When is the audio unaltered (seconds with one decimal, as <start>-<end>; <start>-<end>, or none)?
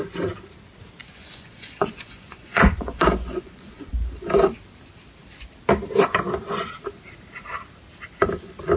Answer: 0.0-1.0; 3.9-8.8